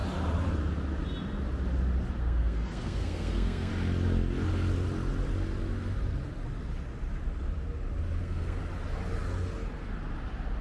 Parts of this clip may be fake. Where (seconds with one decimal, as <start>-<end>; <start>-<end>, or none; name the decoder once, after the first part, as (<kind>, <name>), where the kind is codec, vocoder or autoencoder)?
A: 2.2-3.7 (codec, SNAC); 8.2-8.6